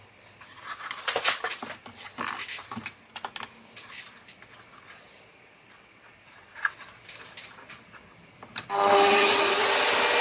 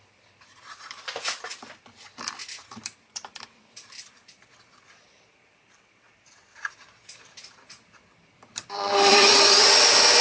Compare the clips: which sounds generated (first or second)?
second